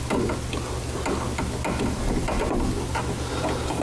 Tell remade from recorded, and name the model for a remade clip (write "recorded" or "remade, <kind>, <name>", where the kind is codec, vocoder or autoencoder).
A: recorded